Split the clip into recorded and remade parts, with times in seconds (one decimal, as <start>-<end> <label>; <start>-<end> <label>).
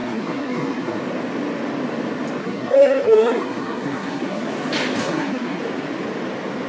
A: 0.0-1.0 remade; 1.0-2.4 recorded; 2.4-4.5 remade; 4.5-5.0 recorded; 5.0-5.6 remade; 5.6-6.7 recorded